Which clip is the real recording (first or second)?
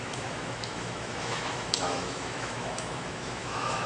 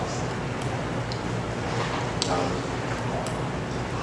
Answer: second